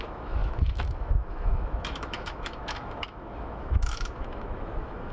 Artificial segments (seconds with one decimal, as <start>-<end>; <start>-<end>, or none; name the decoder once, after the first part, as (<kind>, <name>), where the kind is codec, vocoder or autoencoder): 0.0-5.1 (autoencoder, DAC-VAE)